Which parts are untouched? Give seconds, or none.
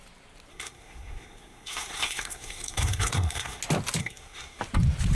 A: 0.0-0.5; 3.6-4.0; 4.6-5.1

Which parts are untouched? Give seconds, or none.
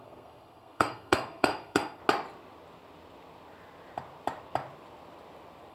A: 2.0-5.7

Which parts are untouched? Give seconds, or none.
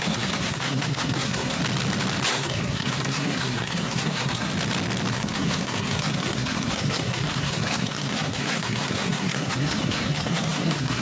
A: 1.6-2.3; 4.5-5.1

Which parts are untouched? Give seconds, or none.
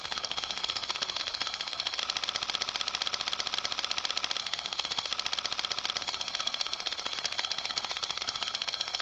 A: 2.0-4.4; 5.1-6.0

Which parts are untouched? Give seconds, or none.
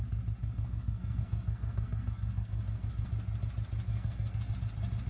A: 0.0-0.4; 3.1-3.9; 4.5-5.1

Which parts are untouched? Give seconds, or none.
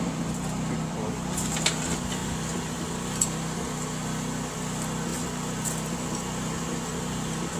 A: 0.0-7.6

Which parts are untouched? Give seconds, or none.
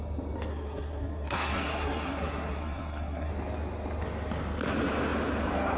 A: 0.0-0.5; 3.3-5.8